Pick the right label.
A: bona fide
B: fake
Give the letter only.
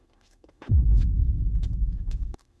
B